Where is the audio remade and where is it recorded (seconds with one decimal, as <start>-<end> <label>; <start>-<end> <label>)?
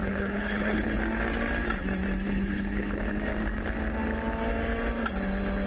0.0-1.0 remade; 1.0-2.3 recorded; 2.3-3.0 remade; 3.0-5.7 recorded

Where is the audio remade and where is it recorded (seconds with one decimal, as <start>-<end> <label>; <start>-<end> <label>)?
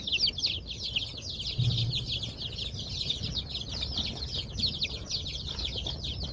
0.0-6.3 recorded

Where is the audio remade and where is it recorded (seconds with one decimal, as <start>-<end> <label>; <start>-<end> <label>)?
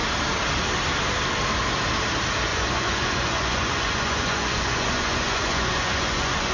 0.0-2.5 recorded; 2.5-6.5 remade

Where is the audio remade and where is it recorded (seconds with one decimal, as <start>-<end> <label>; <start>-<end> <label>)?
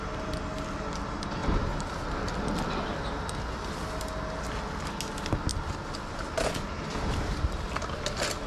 0.0-8.5 recorded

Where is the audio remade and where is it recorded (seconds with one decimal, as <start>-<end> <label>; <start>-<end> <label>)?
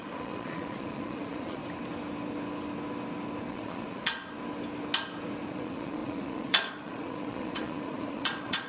0.0-1.6 remade; 1.6-3.5 recorded; 3.5-4.2 remade; 4.2-5.5 recorded; 5.5-8.7 remade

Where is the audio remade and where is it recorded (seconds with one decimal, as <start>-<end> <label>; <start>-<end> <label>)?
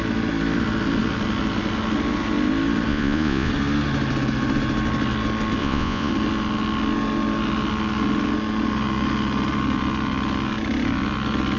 0.0-2.9 recorded; 2.9-3.5 remade; 3.5-5.6 recorded; 5.6-6.1 remade; 6.1-11.6 recorded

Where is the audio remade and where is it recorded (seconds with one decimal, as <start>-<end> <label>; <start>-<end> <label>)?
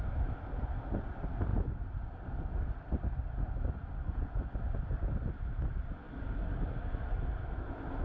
0.0-8.0 recorded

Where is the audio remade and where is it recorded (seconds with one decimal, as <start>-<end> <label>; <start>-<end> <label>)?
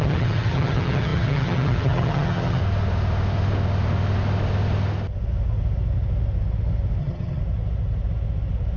0.0-2.6 remade; 2.6-7.0 recorded; 7.0-7.4 remade; 7.4-8.8 recorded